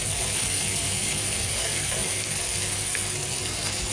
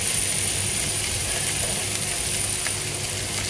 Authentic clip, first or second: second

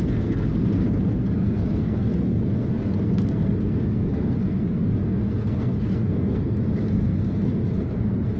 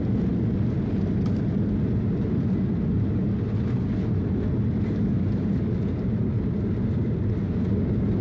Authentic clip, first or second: second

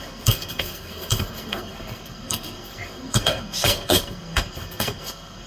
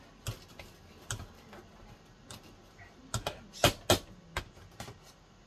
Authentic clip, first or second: second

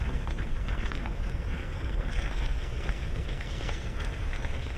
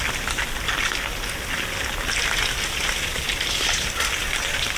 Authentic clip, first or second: second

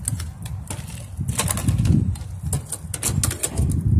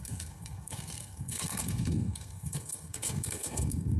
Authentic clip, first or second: first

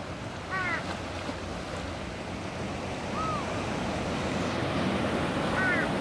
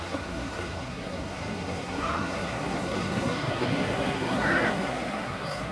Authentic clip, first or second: first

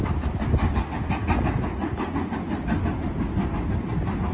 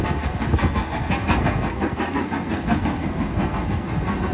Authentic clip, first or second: first